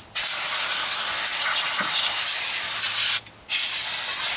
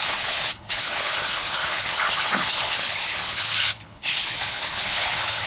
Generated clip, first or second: second